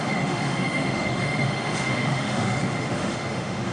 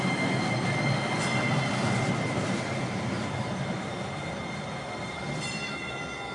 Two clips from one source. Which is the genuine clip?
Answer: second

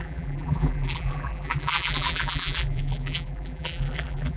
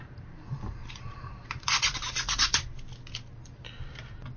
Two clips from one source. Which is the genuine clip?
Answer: second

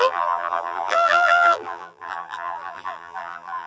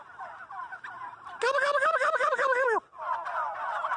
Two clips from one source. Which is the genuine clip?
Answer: second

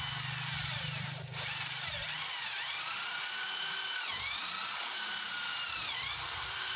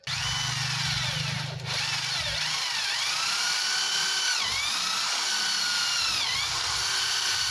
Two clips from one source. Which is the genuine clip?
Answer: second